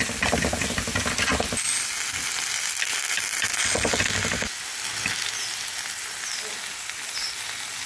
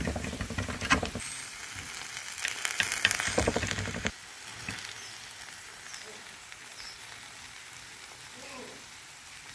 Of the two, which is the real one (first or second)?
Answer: first